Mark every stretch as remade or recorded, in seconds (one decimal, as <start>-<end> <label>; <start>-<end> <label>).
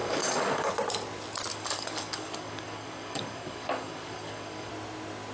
0.0-0.7 remade; 0.7-1.5 recorded; 1.5-4.7 remade; 4.7-5.3 recorded